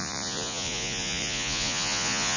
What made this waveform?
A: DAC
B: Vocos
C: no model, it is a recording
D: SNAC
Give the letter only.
B